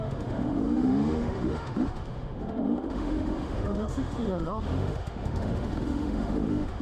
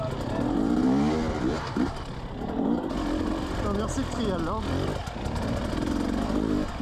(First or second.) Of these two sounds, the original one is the second